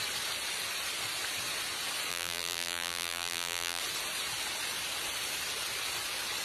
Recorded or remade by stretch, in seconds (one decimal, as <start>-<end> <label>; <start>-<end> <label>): 0.0-2.1 recorded; 2.1-3.8 remade; 3.8-6.4 recorded